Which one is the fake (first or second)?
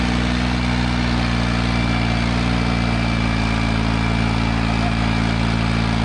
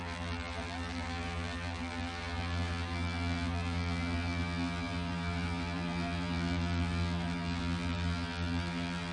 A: second